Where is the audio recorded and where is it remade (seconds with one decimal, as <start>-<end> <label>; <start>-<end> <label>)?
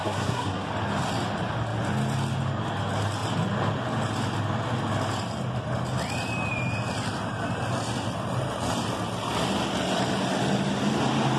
0.0-0.7 remade; 0.7-11.4 recorded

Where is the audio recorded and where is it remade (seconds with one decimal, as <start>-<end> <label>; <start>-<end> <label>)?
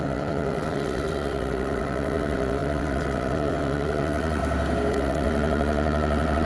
0.0-4.4 remade; 4.4-4.9 recorded; 4.9-6.5 remade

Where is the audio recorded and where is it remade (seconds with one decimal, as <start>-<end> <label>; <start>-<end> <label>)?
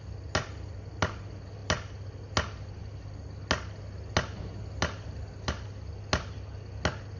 0.0-7.2 recorded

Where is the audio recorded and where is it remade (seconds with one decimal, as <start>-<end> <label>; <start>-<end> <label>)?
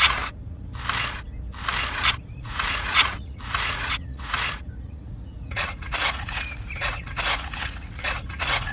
0.0-0.7 remade; 0.7-2.2 recorded; 2.2-8.7 remade